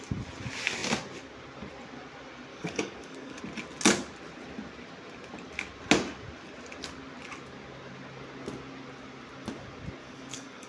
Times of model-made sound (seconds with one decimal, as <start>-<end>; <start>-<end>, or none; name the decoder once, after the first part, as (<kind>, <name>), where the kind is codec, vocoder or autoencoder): 2.5-3.4 (codec, DAC); 10.0-10.7